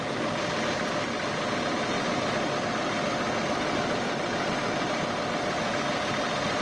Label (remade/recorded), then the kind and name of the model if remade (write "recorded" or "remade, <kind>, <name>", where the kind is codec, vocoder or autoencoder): recorded